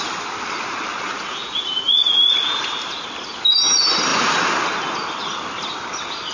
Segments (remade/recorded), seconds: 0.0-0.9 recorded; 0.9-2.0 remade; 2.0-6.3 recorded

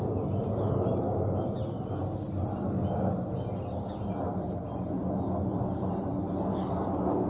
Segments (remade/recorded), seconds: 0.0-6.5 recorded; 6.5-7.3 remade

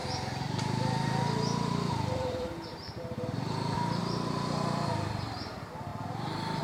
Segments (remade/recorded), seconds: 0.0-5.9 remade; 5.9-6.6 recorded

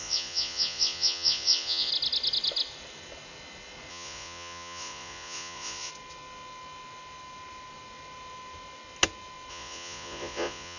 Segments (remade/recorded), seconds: 0.0-1.9 remade; 1.9-3.9 recorded; 3.9-5.9 remade; 5.9-9.5 recorded; 9.5-10.8 remade

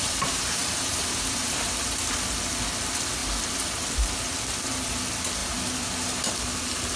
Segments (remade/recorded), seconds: 0.0-1.8 remade; 1.8-5.4 recorded; 5.4-6.3 remade; 6.3-7.0 recorded

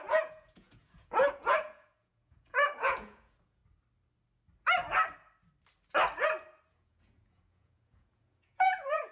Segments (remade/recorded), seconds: 0.0-3.6 remade; 3.6-6.7 recorded; 6.7-9.1 remade